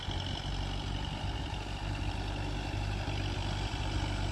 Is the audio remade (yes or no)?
no